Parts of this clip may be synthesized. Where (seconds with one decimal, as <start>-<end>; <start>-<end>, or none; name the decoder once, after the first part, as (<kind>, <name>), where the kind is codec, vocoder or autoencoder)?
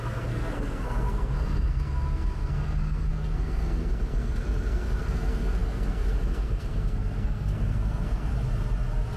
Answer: 0.0-8.3 (codec, SNAC)